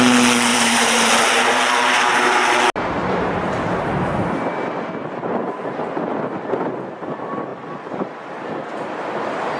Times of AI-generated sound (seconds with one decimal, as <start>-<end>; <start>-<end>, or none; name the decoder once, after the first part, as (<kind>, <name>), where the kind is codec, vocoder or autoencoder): 0.5-1.1 (vocoder, BigVGAN v2); 3.0-4.1; 7.5-8.4